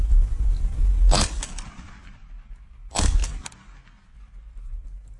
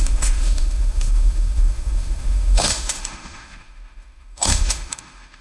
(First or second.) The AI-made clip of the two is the second